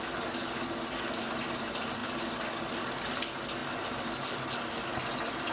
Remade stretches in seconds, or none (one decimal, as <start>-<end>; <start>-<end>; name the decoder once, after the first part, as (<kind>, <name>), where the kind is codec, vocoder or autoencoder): none